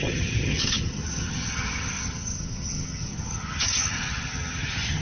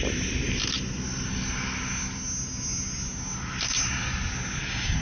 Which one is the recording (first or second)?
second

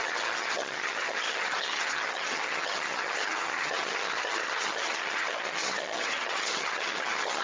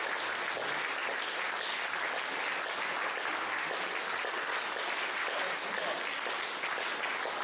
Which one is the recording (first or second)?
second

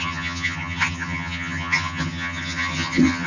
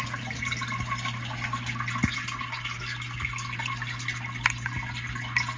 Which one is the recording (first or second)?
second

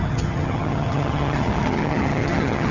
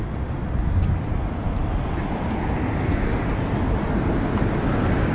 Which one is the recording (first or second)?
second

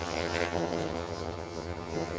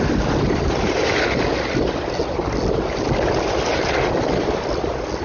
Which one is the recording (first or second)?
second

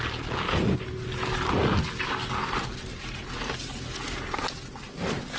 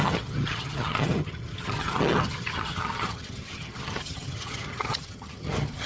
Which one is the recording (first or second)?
first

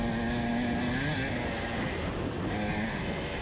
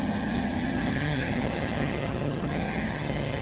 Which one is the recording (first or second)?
first